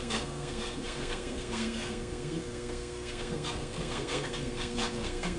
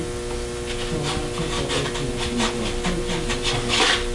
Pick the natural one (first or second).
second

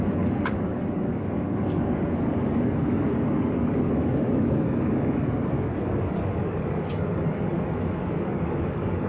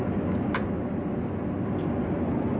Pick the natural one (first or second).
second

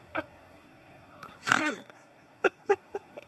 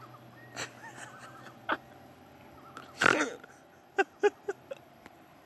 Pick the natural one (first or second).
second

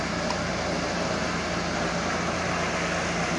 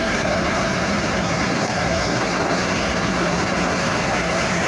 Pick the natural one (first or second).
first